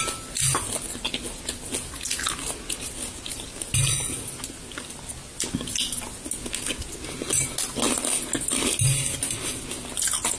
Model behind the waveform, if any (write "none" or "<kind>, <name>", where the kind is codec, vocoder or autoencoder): none